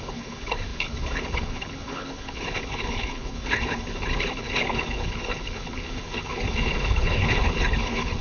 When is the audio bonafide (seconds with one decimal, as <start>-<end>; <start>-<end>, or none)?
none